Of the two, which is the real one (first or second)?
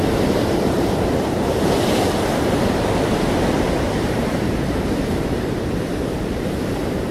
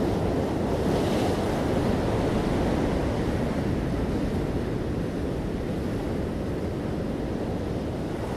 second